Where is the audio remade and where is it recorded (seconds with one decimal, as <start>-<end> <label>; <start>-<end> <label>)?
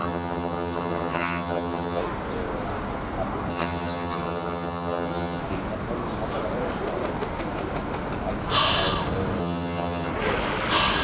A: 0.0-2.0 remade; 2.0-3.5 recorded; 3.5-5.4 remade; 5.4-9.4 recorded; 9.4-10.1 remade; 10.1-11.0 recorded